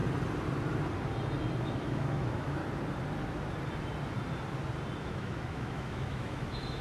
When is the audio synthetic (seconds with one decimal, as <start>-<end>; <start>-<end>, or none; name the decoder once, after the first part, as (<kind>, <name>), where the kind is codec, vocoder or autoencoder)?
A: 1.6-2.6 (autoencoder, DAC-VAE); 5.0-6.8